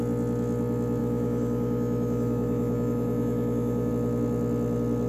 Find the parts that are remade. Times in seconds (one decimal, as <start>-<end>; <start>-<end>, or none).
1.0-3.9